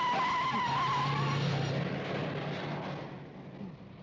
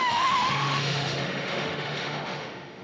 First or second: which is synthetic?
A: second